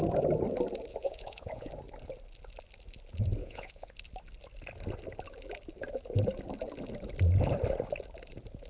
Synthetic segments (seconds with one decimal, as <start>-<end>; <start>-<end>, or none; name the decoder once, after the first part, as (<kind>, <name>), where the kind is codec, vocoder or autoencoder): 0.9-1.7 (vocoder, Vocos); 3.4-3.9